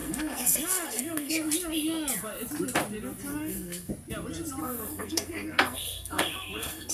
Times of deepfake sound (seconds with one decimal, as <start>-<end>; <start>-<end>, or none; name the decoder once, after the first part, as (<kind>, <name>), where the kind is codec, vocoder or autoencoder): 0.0-1.3 (codec, SNAC); 3.3-3.9; 4.6-6.9